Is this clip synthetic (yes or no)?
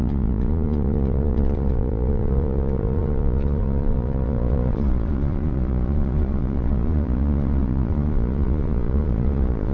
yes